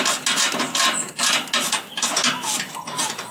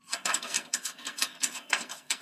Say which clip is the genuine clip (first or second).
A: first